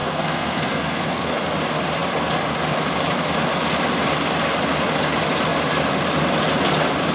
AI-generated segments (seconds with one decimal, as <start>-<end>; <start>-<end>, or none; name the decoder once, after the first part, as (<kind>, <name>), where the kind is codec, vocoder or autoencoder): 0.0-1.3 (codec, SNAC)